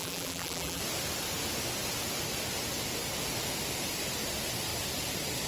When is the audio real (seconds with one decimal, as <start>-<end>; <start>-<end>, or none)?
0.8-5.5